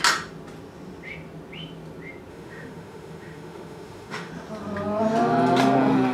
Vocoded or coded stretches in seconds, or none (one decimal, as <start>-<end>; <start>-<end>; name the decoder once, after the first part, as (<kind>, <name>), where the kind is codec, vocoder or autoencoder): 2.3-4.3 (autoencoder, DAC-VAE)